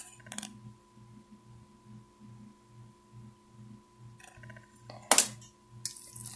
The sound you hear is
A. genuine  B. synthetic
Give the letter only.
A